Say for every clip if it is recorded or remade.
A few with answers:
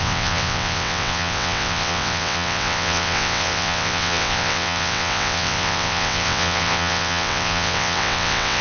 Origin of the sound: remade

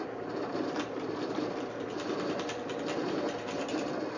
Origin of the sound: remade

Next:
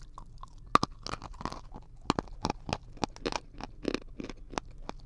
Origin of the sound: recorded